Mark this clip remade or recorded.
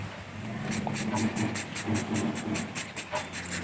recorded